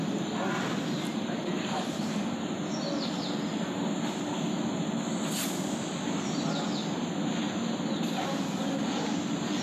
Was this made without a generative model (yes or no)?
yes